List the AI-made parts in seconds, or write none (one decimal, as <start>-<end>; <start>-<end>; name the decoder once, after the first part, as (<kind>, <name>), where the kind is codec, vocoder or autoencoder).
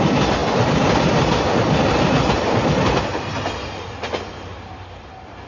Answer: none